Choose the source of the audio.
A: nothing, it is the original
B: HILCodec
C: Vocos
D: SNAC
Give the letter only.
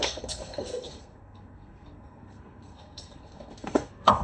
D